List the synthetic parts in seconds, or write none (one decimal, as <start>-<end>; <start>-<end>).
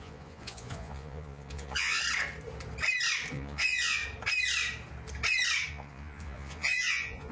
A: 0.0-2.0; 3.3-4.0; 5.7-7.3